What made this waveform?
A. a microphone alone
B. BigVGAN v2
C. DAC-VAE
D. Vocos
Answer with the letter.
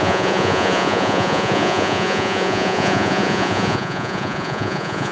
D